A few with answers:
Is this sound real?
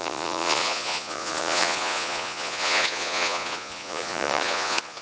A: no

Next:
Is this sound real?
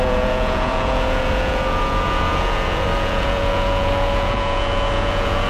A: no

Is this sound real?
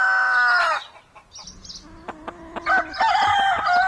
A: yes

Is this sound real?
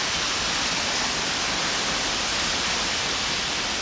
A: yes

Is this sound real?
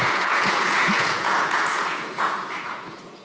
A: no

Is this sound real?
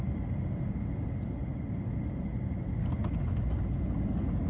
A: yes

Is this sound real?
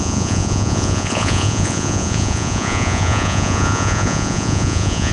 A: no